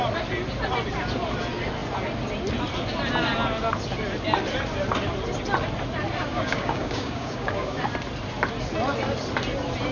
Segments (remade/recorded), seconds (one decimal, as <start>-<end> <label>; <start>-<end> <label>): 0.0-6.3 recorded; 6.3-7.8 remade; 7.8-9.9 recorded